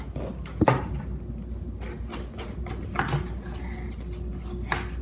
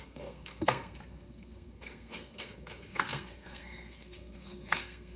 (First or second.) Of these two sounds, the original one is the first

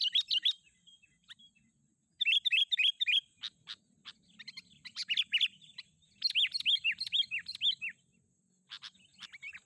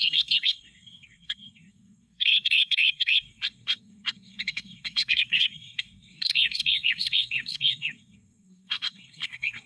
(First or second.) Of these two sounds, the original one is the first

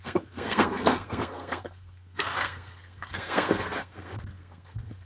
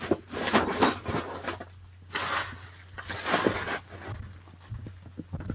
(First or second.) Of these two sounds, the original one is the second